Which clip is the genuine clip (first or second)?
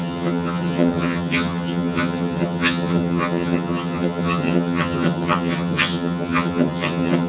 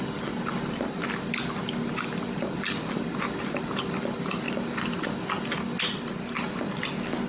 second